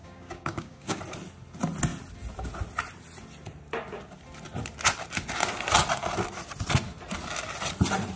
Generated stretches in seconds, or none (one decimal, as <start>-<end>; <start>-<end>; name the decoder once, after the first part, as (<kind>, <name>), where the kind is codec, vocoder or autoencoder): 0.0-1.0 (codec, DAC)